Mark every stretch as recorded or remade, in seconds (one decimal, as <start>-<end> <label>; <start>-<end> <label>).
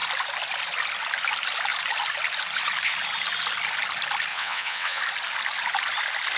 0.0-4.3 recorded; 4.3-5.0 remade; 5.0-6.4 recorded